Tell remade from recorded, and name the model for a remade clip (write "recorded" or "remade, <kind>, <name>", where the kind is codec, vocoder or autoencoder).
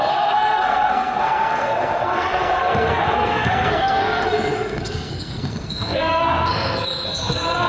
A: remade, codec, SNAC